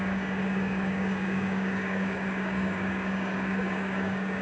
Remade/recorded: remade